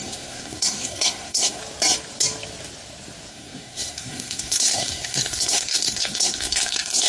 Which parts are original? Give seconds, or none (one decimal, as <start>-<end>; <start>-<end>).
1.6-3.3